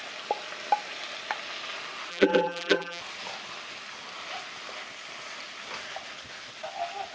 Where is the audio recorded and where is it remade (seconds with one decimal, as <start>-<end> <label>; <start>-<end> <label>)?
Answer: 0.0-2.1 recorded; 2.1-3.0 remade; 3.0-7.1 recorded